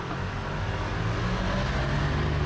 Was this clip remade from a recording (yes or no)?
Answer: no